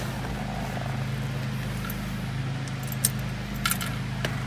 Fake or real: real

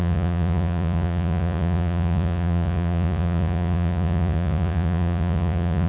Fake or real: fake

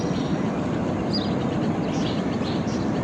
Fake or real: real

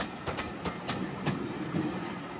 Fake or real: real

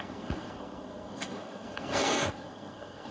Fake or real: fake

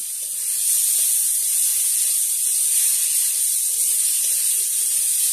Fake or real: real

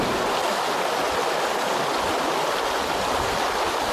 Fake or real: real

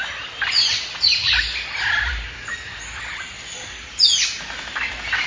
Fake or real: real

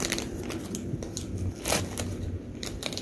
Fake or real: fake